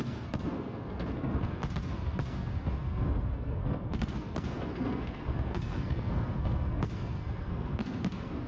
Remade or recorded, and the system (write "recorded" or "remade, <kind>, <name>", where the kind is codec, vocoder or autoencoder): remade, codec, SNAC